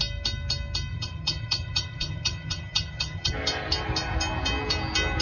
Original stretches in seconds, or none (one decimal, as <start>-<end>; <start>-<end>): 0.0-0.9; 3.3-5.2